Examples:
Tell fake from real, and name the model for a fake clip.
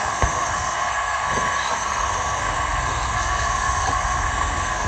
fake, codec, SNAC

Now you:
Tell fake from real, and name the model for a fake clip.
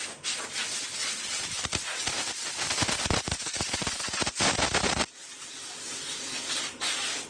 real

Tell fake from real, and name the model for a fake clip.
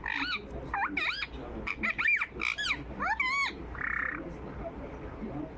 real